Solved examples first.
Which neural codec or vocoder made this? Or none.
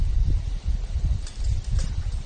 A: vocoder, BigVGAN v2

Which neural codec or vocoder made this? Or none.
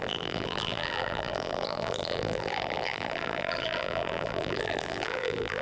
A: vocoder, BigVGAN v2